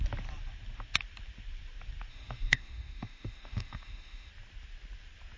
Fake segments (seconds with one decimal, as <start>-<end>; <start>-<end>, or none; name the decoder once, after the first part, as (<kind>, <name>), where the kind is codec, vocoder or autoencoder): 2.1-4.3 (autoencoder, DAC-VAE)